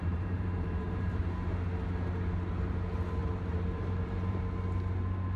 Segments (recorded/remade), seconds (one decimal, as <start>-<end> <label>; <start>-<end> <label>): 0.0-1.2 remade; 1.2-3.2 recorded; 3.2-4.4 remade; 4.4-5.4 recorded